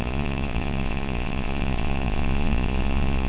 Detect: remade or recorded remade